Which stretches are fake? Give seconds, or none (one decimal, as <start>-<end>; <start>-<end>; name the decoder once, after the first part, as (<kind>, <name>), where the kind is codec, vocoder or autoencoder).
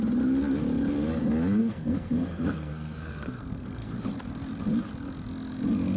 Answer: 1.6-3.9 (codec, SNAC)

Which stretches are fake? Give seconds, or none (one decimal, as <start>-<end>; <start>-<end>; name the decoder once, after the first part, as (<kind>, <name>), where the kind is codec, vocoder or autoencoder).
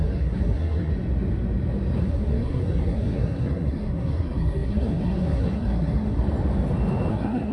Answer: 0.0-0.9 (codec, SNAC); 2.0-6.2; 7.1-7.5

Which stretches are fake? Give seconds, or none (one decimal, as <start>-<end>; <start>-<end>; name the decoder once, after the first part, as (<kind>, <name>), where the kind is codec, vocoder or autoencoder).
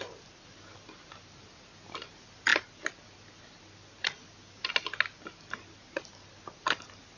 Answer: none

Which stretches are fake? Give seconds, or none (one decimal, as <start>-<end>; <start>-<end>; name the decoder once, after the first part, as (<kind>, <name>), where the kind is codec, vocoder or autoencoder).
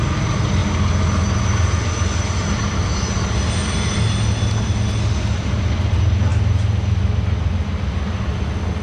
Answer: none